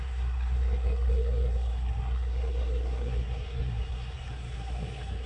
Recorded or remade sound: remade